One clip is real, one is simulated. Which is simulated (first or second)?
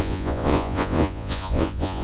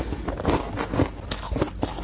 first